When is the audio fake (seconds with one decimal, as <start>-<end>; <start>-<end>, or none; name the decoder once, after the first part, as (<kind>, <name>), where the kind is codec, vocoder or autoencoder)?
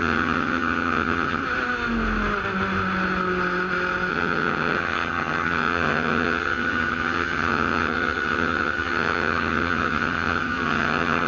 0.0-1.4 (vocoder, HiFi-GAN); 4.1-11.3